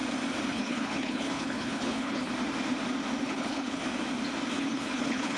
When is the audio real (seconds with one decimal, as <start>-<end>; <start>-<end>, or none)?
0.0-0.5; 2.3-3.2; 3.8-4.5